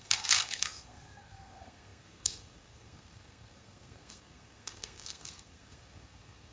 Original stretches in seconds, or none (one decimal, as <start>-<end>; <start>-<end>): none